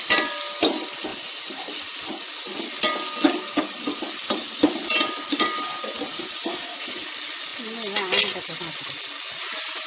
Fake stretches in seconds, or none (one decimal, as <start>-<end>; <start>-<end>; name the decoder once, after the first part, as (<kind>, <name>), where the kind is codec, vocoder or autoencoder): 6.3-7.1 (vocoder, Vocos)